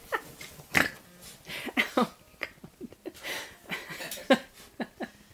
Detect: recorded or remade recorded